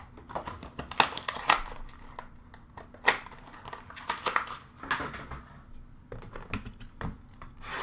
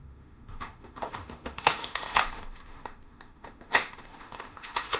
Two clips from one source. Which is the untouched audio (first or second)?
first